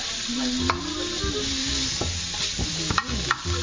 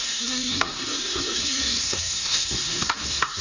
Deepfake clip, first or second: second